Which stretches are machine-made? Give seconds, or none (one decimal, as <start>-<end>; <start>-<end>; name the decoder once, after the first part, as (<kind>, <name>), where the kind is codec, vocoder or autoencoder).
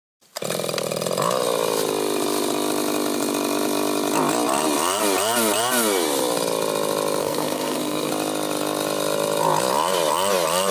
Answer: 7.2-8.1 (codec, SNAC)